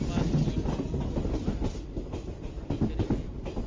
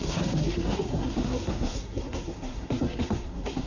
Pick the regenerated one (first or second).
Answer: second